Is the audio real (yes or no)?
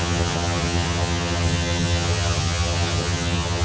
no